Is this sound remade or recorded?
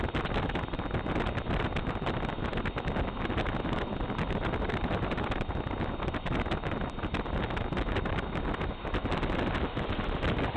recorded